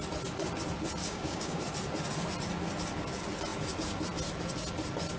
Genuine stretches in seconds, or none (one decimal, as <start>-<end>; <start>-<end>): 0.0-1.0; 1.6-5.2